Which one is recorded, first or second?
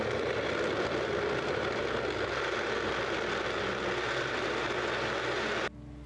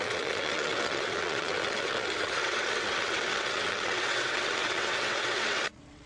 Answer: first